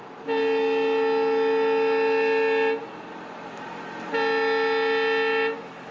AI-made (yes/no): no